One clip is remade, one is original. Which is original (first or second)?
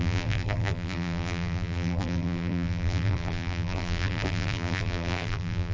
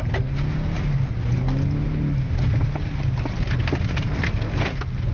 second